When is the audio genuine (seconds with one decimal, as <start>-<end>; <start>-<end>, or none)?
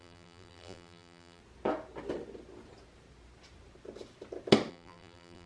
1.4-4.7